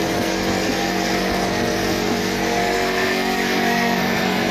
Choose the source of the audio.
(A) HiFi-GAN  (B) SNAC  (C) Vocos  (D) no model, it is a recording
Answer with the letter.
B